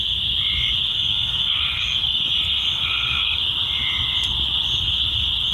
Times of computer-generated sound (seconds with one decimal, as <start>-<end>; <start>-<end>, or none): 0.9-2.2; 2.8-3.4

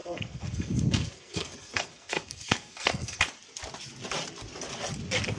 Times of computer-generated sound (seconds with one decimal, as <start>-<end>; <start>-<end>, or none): 0.0-3.2

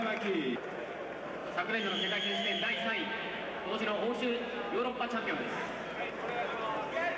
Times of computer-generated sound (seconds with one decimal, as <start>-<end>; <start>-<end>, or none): 1.4-3.8; 4.9-5.7